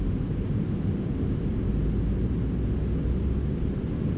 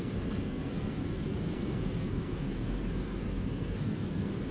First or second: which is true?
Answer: first